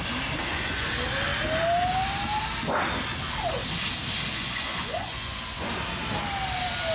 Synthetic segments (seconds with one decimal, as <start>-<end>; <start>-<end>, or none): 0.4-0.9; 4.3-5.7